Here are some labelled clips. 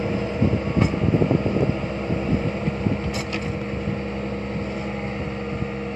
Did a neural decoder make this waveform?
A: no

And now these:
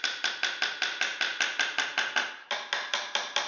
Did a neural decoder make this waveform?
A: no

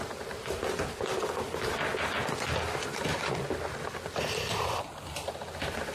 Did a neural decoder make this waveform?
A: no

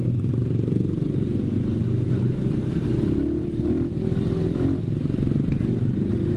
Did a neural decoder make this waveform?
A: no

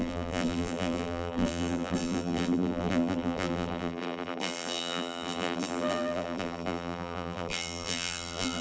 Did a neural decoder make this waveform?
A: yes